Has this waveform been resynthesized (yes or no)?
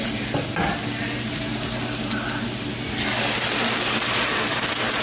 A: no